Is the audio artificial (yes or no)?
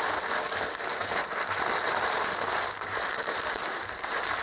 yes